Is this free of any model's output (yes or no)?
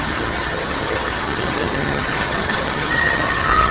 no